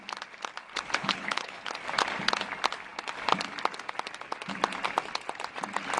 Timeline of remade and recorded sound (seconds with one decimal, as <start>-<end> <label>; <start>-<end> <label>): 0.0-1.0 recorded; 1.0-1.7 remade; 1.7-6.0 recorded